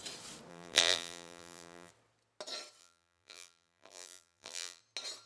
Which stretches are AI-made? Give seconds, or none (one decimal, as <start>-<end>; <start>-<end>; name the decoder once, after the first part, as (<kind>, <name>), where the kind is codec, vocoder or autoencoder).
0.5-1.9 (vocoder, BigVGAN v2); 2.8-4.8